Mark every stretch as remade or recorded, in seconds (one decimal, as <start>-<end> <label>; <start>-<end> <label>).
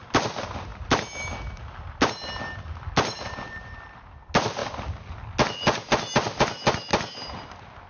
0.0-7.9 recorded